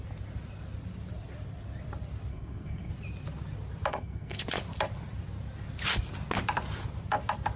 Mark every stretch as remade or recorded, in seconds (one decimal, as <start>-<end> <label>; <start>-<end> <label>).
0.0-2.3 recorded; 2.3-2.9 remade; 2.9-3.9 recorded; 3.9-4.4 remade; 4.4-7.6 recorded